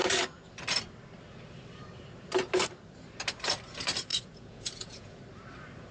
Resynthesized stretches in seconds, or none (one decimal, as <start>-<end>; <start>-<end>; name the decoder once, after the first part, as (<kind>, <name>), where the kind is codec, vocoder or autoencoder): 4.1-5.2 (vocoder, Vocos)